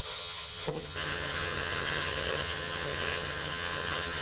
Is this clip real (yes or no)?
no